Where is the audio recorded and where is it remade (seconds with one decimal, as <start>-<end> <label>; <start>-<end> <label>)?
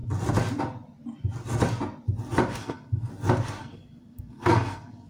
0.0-2.6 recorded; 2.6-3.1 remade; 3.1-3.6 recorded; 3.6-5.1 remade